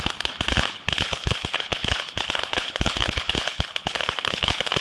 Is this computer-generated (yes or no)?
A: yes